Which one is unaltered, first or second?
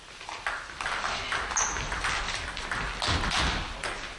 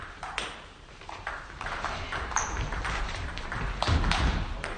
first